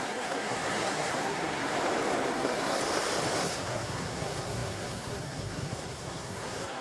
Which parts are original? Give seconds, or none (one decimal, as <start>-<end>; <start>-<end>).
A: 1.7-2.3; 2.8-3.4